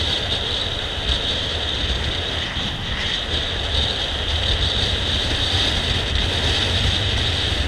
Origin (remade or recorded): recorded